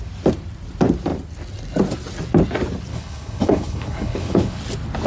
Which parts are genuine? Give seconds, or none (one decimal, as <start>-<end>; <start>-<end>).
0.0-2.9; 4.6-5.1

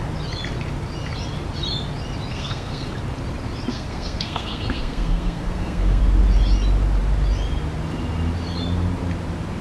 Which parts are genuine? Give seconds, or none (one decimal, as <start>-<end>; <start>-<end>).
0.0-2.3; 2.9-3.7; 6.0-9.6